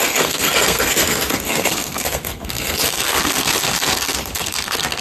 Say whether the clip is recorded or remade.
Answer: remade